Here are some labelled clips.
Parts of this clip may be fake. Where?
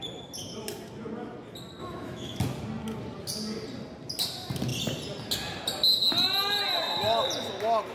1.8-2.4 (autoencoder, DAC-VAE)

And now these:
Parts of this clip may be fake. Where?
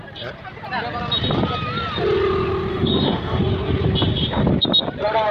2.7-3.4 (autoencoder, DAC-VAE)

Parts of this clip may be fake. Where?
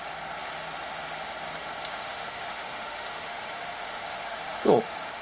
1.9-5.2 (autoencoder, DAC-VAE)